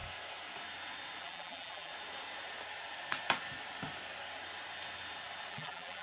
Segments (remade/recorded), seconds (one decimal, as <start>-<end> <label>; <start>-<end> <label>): 0.0-1.2 recorded; 1.2-1.9 remade; 1.9-5.5 recorded; 5.5-6.0 remade

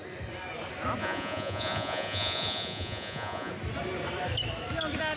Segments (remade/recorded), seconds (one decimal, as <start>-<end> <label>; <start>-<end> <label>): 0.0-1.0 recorded; 1.0-3.5 remade; 3.5-5.2 recorded

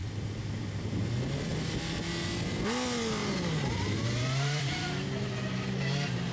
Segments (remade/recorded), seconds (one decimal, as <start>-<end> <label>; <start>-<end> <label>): 0.0-3.2 recorded; 3.2-4.9 remade; 4.9-6.3 recorded

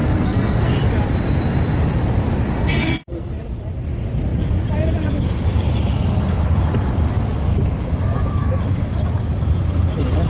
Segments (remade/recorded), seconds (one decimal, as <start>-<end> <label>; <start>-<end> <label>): 0.0-0.7 remade; 0.7-2.6 recorded; 2.6-3.3 remade; 3.3-10.3 recorded

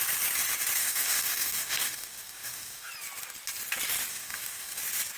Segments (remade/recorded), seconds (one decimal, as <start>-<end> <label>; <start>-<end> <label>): 0.0-0.8 recorded; 0.8-2.9 remade; 2.9-4.1 recorded; 4.1-4.8 remade; 4.8-5.2 recorded